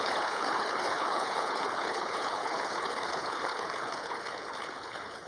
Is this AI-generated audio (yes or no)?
yes